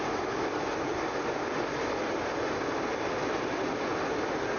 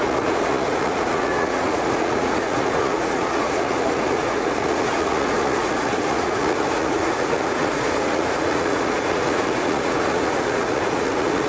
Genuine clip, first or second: first